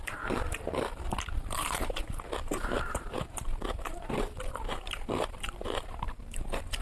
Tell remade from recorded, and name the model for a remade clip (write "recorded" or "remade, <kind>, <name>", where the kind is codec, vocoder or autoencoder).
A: remade, vocoder, BigVGAN v2